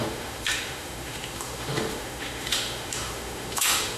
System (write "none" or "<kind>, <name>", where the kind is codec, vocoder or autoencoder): autoencoder, DAC-VAE